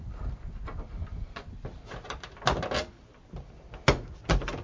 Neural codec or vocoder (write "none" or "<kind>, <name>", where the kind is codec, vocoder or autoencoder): none